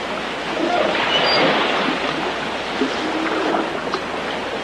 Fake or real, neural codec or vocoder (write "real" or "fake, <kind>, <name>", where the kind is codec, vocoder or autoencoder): real